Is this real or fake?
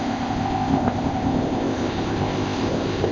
fake